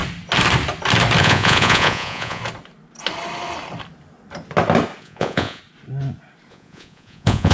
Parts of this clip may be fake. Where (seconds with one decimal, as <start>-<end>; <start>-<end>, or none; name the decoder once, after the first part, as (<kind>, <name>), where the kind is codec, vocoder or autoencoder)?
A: 1.2-2.4 (vocoder, Vocos); 5.0-5.6; 6.5-7.5